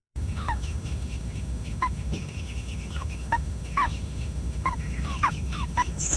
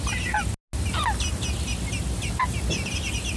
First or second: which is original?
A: second